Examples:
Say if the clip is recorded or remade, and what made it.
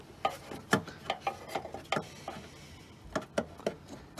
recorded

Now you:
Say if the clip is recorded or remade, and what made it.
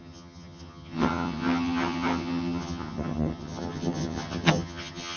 remade, vocoder, HiFi-GAN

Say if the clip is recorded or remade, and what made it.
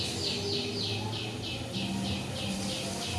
recorded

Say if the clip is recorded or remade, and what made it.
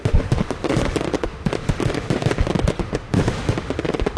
remade, autoencoder, DAC-VAE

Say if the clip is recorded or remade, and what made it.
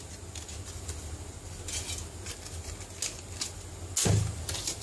recorded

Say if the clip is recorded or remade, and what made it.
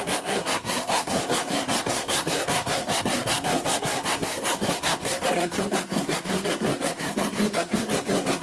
remade, codec, SNAC